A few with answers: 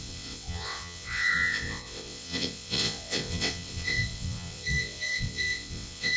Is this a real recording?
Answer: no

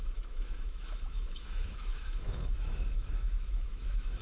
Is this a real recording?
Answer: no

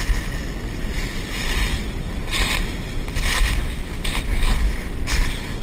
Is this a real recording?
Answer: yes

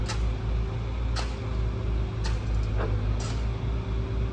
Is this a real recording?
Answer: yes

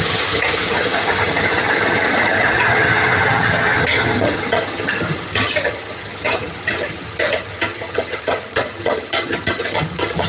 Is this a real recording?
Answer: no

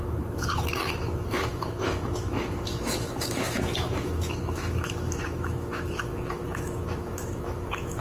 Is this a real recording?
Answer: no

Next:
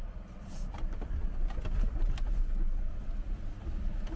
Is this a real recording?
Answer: yes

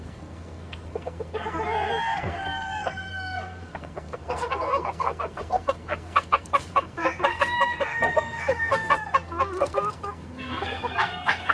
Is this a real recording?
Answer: no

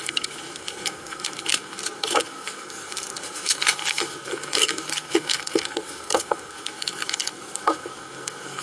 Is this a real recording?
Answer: no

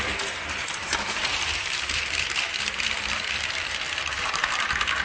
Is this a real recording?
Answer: no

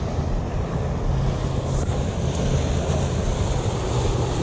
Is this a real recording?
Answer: yes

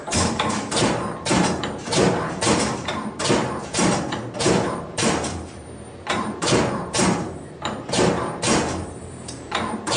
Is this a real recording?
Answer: no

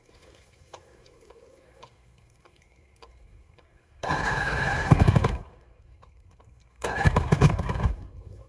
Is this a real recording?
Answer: no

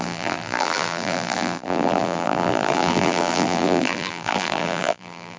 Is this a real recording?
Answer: no